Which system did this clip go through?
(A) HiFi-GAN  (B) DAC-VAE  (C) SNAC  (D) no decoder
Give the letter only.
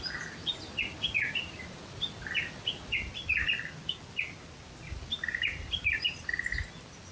D